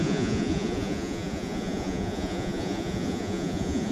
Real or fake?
fake